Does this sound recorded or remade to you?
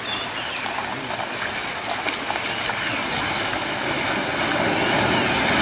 recorded